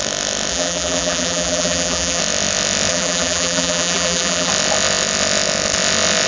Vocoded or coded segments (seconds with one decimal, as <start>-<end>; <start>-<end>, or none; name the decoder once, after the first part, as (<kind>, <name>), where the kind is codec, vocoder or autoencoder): 0.5-2.2 (vocoder, BigVGAN v2); 2.9-4.5